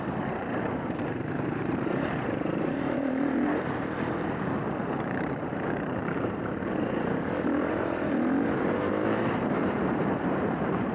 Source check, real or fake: fake